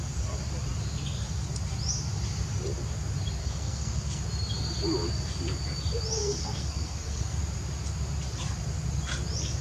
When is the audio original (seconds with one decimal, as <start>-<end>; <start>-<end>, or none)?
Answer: 0.0-3.4; 4.2-6.2; 7.4-9.6